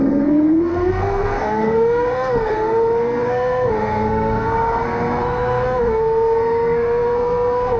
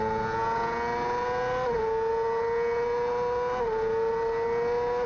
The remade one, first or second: first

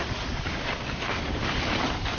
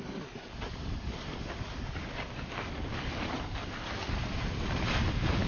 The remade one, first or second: first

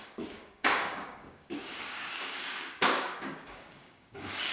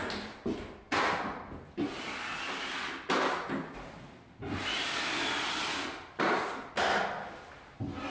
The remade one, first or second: first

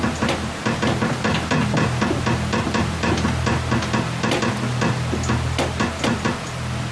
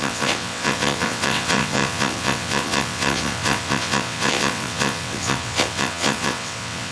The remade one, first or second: second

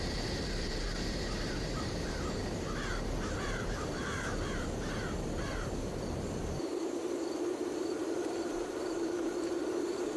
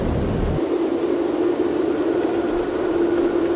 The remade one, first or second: first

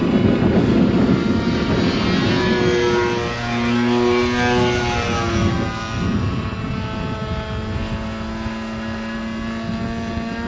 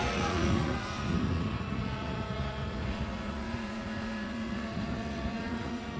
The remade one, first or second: second